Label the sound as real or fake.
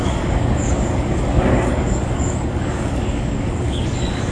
fake